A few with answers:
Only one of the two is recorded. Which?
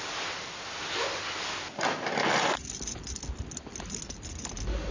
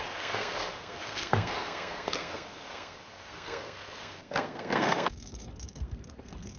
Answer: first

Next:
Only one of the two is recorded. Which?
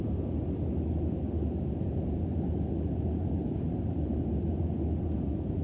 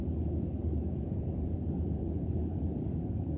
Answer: first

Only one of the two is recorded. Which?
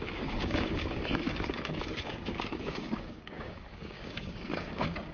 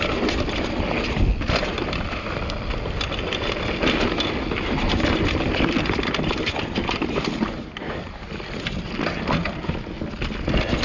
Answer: second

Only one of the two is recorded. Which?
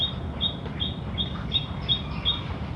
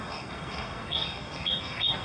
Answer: first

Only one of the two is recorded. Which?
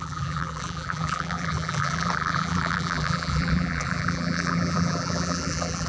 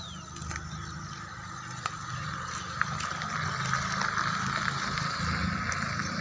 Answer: second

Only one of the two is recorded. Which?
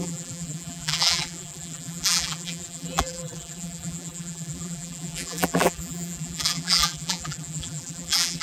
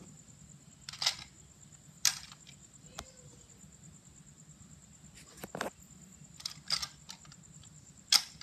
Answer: second